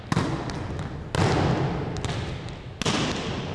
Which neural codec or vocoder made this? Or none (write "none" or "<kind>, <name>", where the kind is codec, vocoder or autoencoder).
none